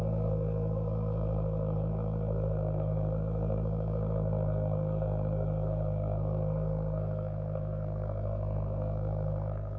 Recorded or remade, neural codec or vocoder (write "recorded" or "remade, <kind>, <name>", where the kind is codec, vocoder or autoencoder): remade, codec, SNAC